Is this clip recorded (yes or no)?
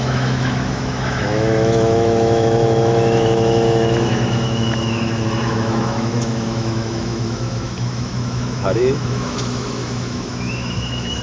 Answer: no